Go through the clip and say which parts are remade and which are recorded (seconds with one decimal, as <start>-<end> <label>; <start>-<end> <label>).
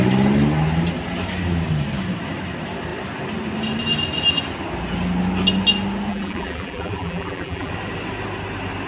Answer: 0.0-6.1 recorded; 6.1-7.7 remade; 7.7-8.9 recorded